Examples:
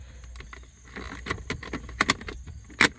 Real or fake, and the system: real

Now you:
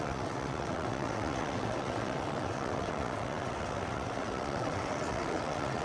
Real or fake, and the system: fake, vocoder, WaveNeXt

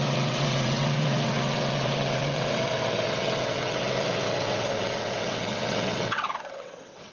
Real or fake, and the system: fake, vocoder, WaveNeXt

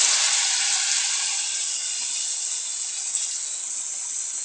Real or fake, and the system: real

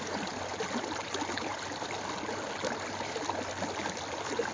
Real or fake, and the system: real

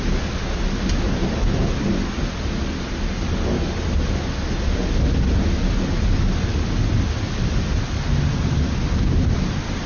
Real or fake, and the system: real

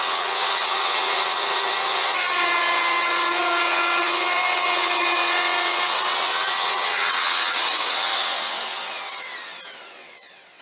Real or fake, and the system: fake, vocoder, WaveNeXt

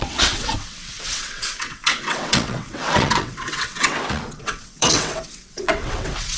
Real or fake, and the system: fake, vocoder, WaveNeXt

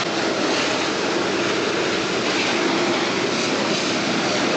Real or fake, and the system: real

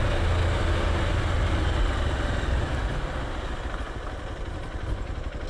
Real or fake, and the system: real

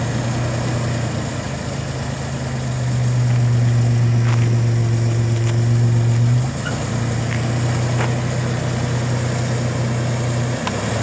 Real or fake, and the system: real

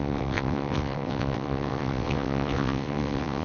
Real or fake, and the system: fake, vocoder, WaveNeXt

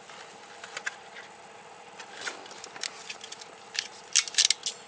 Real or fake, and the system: real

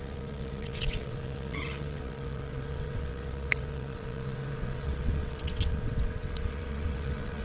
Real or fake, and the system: fake, vocoder, WaveNeXt